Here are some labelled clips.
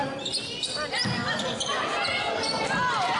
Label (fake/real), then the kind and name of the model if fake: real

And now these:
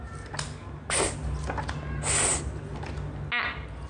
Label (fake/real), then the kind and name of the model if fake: real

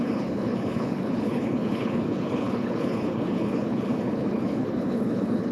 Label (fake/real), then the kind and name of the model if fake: fake, codec, HILCodec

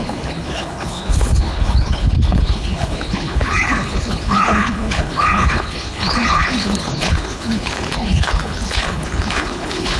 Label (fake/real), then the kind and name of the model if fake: fake, codec, HILCodec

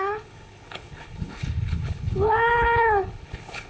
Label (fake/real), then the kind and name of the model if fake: fake, codec, HILCodec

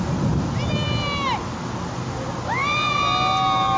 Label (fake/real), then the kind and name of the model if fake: real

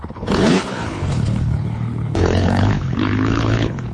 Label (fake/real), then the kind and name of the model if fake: fake, codec, HILCodec